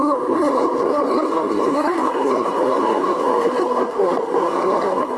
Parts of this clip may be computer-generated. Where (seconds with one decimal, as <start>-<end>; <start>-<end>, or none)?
0.0-5.2